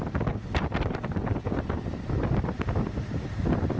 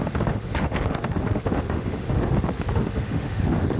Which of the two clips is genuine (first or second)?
first